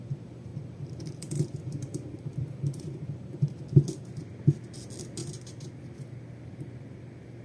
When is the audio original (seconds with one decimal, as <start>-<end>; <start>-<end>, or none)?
0.0-0.5; 3.6-5.2